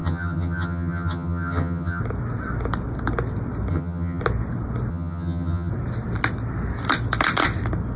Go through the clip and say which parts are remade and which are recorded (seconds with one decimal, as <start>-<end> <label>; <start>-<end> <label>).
0.0-2.0 remade; 2.0-3.7 recorded; 3.7-4.2 remade; 4.2-4.9 recorded; 4.9-5.7 remade; 5.7-8.0 recorded